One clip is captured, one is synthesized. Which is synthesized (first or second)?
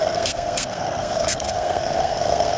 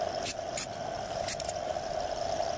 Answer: first